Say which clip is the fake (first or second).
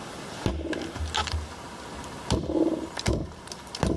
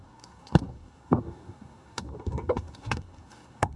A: second